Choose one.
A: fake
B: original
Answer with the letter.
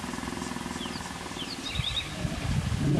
B